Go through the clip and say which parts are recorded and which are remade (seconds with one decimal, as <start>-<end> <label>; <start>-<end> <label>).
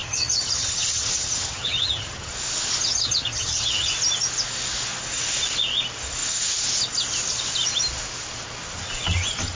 0.0-2.3 remade; 2.3-2.9 recorded; 2.9-3.9 remade; 3.9-9.5 recorded